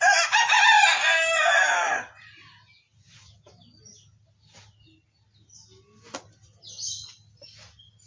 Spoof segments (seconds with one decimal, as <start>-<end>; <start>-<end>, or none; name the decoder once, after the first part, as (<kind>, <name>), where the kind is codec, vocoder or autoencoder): none

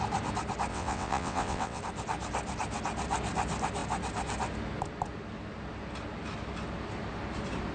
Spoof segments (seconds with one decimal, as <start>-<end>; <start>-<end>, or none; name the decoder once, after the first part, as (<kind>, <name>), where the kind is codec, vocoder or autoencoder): 0.7-1.8 (vocoder, WaveNeXt)

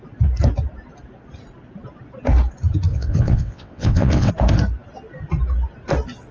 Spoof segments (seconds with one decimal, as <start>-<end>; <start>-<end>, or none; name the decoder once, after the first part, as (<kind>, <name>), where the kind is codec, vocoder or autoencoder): 2.9-4.3 (vocoder, WaveNeXt)

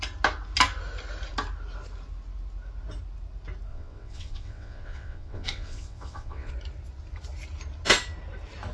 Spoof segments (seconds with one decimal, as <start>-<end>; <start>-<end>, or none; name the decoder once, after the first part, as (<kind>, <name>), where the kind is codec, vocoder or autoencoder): 3.7-6.5 (vocoder, WaveNeXt)

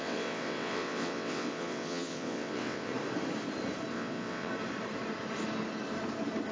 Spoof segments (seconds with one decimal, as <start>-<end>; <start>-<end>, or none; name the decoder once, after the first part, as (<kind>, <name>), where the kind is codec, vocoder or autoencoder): 0.0-2.9 (vocoder, WaveNeXt); 3.9-4.5

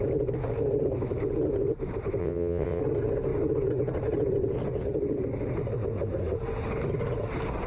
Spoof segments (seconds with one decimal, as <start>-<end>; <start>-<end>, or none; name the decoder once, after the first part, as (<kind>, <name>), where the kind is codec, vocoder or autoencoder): 2.2-2.8 (vocoder, WaveNeXt)

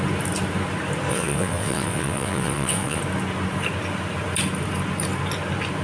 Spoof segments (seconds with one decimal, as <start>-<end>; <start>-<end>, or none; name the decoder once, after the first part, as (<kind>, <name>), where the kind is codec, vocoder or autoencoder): 1.1-3.0 (vocoder, WaveNeXt)